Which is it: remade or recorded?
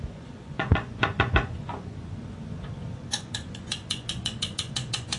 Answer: remade